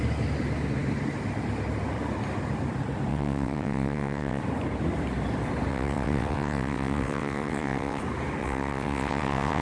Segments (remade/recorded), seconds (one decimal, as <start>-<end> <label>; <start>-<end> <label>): 0.0-3.1 recorded; 3.1-4.4 remade; 4.4-5.7 recorded; 5.7-8.0 remade; 8.0-8.4 recorded; 8.4-9.6 remade

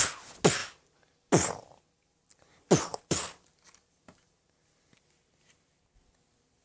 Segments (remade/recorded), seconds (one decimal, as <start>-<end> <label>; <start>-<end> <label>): 0.0-2.9 recorded; 2.9-4.0 remade; 4.0-6.6 recorded

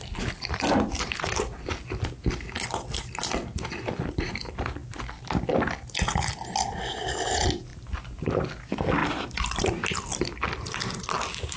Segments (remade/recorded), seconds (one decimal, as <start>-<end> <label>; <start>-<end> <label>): 0.0-11.6 recorded